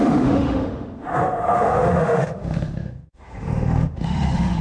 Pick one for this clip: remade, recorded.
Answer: remade